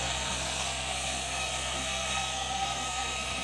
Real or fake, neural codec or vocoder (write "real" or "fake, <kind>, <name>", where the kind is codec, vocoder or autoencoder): fake, codec, SNAC